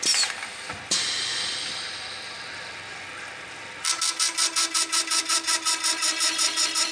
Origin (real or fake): real